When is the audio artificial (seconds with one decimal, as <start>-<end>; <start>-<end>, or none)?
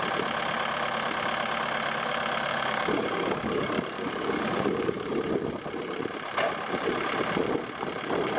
2.5-5.1